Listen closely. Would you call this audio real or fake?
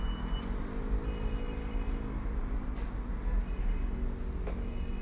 real